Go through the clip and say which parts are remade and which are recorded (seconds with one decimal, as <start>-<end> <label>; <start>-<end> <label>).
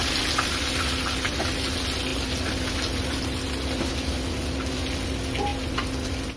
0.0-6.4 recorded